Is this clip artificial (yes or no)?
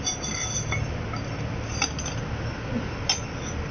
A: no